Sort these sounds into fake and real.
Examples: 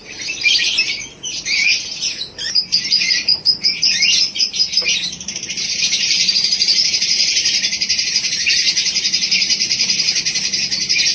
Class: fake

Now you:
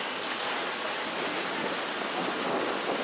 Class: real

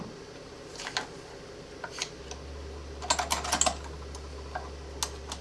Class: real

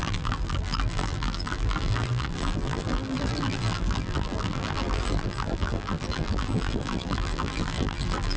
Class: fake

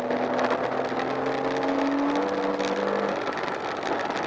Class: real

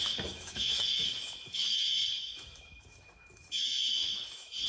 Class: fake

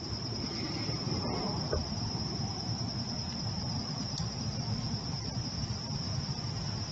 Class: real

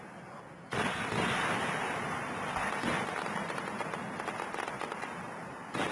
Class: real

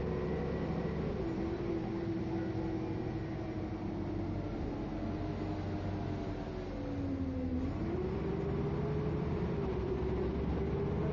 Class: real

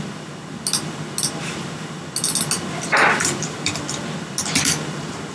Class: real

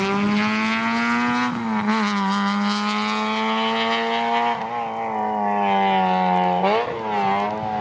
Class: real